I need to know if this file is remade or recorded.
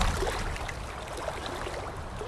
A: recorded